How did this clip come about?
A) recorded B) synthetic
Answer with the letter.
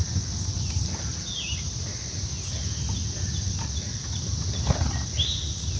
A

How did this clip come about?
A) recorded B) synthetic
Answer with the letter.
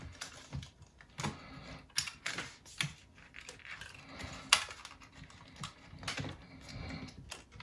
A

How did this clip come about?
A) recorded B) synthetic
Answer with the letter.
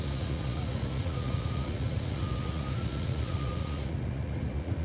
B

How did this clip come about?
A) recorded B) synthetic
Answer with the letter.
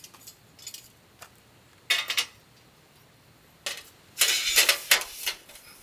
A